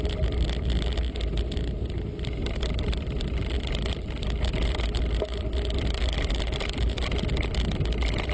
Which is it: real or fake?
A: real